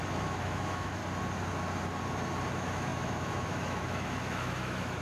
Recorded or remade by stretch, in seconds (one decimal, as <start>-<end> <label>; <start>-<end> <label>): 0.0-1.0 remade; 1.0-2.5 recorded; 2.5-5.0 remade